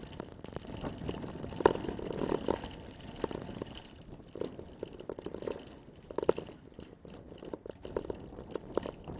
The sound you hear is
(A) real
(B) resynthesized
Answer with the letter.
A